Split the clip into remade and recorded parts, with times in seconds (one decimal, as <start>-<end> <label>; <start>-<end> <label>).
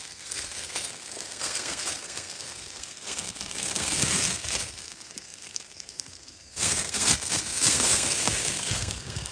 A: 0.0-9.3 remade